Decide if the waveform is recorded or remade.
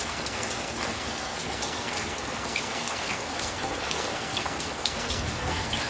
remade